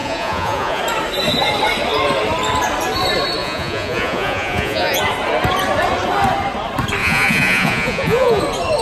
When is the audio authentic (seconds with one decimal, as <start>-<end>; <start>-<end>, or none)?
0.8-3.4; 5.0-7.0; 8.4-8.8